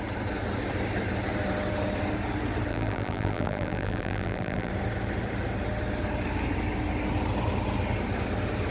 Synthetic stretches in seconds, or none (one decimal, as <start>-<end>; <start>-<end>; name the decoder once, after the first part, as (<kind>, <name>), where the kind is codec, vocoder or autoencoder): 2.7-4.7 (vocoder, BigVGAN v2)